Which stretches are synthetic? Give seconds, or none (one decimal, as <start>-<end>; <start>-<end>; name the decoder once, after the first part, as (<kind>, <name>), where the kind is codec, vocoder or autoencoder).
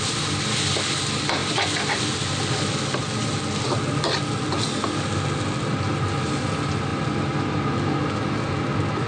none